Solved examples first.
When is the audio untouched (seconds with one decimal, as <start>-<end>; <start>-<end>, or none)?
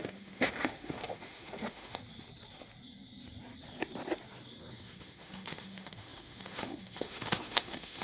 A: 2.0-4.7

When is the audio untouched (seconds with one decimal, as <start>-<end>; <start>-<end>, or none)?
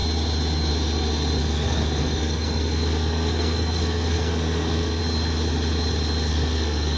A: 0.0-1.4; 5.0-6.3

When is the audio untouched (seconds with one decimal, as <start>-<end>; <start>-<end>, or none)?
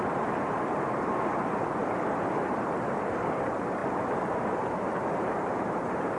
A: 1.8-2.5